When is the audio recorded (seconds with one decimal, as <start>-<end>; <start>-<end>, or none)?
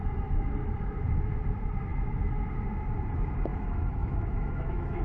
0.0-3.5